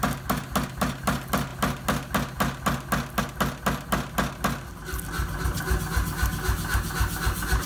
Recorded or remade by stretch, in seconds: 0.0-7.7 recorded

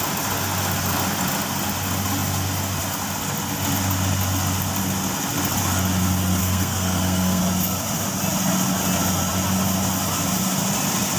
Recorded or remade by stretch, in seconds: 0.0-6.4 recorded; 6.4-7.4 remade; 7.4-11.2 recorded